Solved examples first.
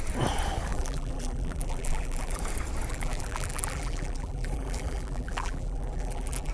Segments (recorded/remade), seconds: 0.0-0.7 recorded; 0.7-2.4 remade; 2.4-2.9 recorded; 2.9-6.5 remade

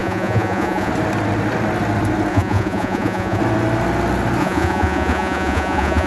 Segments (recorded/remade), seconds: 0.0-0.9 remade; 0.9-2.3 recorded; 2.3-3.4 remade; 3.4-4.4 recorded; 4.4-6.1 remade